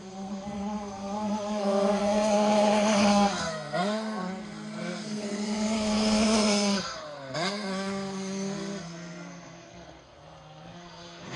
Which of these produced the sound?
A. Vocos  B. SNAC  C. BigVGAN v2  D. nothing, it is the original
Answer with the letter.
B